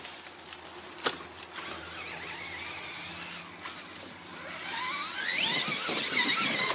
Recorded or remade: recorded